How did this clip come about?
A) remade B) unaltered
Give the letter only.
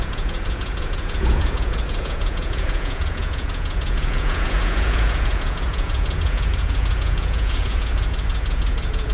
A